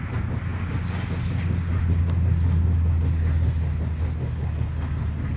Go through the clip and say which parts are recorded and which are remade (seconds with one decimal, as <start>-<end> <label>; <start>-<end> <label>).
0.0-5.4 recorded